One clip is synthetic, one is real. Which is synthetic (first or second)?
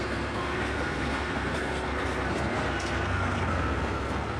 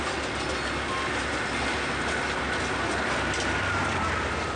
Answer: first